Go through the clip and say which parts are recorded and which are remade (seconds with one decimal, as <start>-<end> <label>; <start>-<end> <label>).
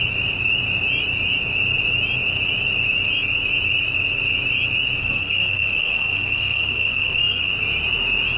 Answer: 0.0-5.0 recorded; 5.0-7.5 remade; 7.5-8.4 recorded